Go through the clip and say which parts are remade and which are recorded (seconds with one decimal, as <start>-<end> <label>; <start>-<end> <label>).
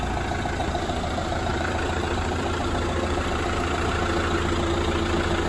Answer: 0.0-0.6 recorded; 0.6-3.9 remade; 3.9-5.5 recorded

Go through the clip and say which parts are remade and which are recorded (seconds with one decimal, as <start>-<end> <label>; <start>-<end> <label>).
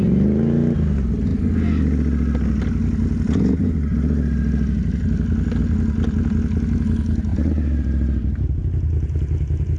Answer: 0.0-7.3 recorded; 7.3-8.6 remade; 8.6-9.8 recorded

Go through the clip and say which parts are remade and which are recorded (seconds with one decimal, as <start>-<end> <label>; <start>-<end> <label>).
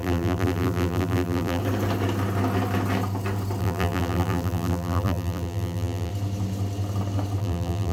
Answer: 0.0-1.6 remade; 1.6-3.6 recorded; 3.6-6.1 remade; 6.1-7.4 recorded; 7.4-7.9 remade